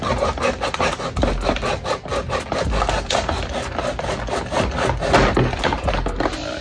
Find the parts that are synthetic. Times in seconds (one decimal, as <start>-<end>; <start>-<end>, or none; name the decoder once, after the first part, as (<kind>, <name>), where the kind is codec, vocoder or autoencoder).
none